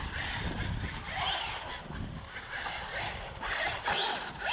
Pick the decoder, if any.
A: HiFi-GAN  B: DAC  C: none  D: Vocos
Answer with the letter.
C